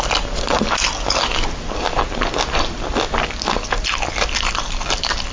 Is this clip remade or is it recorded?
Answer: recorded